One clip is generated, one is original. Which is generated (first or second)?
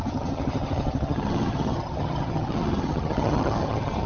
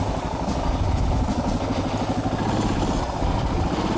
first